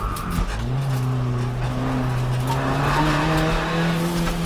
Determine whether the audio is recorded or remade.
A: recorded